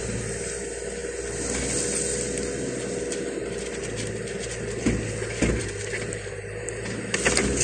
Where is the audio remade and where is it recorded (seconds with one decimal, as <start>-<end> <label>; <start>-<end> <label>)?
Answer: 0.0-7.6 recorded